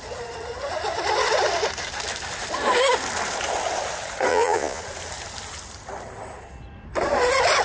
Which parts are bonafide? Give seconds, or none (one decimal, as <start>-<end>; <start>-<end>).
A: 0.0-4.3; 4.8-7.6